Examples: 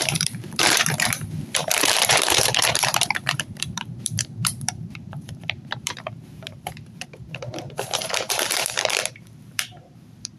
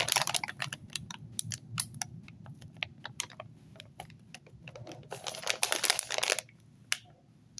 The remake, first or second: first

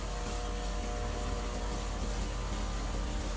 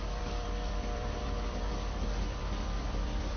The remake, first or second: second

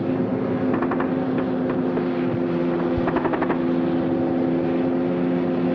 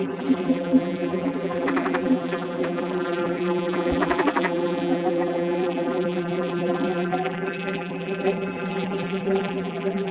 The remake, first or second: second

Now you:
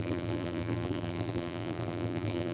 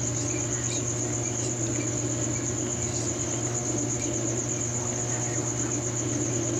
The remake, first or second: first